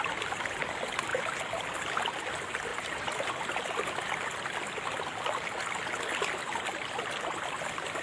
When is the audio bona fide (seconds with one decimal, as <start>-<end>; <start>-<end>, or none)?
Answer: 0.0-2.7; 3.6-8.0